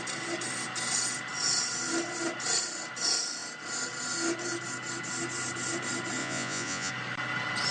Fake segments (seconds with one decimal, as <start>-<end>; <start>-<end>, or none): 6.2-6.9